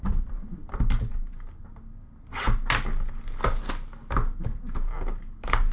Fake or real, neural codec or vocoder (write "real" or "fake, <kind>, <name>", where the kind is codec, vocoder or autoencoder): real